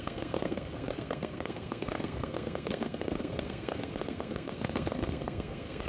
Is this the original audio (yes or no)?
no